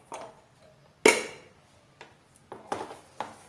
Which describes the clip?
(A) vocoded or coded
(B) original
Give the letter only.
B